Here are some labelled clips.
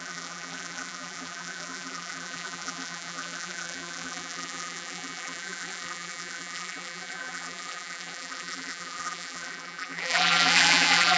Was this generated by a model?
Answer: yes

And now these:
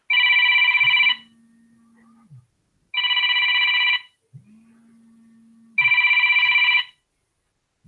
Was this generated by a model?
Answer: no